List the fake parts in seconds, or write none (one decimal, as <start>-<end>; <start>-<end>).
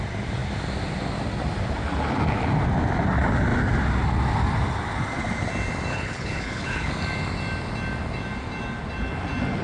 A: 5.9-6.9